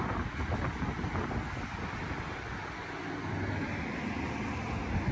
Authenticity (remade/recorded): recorded